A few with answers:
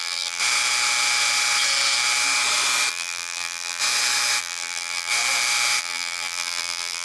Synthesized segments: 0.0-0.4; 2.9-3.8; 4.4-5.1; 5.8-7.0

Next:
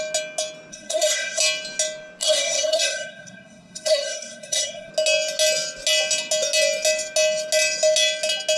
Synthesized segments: 0.7-1.4; 2.2-4.9